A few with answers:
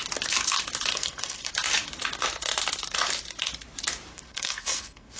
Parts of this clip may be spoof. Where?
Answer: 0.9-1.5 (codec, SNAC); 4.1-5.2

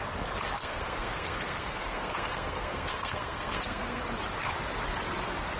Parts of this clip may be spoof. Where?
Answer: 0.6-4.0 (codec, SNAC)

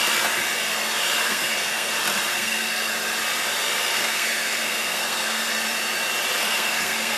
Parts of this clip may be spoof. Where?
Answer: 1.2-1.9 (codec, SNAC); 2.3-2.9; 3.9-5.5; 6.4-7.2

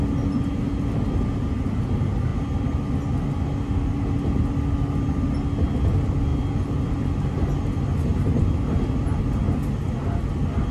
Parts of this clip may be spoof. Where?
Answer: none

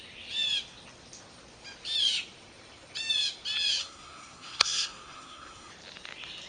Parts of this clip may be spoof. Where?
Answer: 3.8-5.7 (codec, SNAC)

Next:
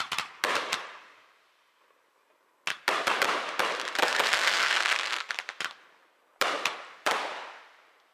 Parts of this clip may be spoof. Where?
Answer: 4.0-5.3 (codec, SNAC)